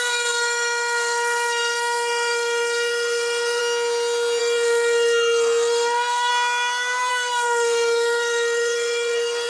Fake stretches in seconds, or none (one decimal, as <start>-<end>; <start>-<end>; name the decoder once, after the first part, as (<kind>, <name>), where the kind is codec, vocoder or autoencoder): 0.0-3.6 (codec, SNAC); 4.4-6.3; 7.1-9.5